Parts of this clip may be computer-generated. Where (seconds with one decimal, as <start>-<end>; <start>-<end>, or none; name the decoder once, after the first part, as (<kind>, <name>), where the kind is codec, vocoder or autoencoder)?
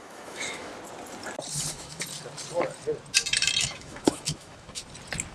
0.0-0.7 (autoencoder, DAC-VAE); 1.7-2.1; 3.6-4.8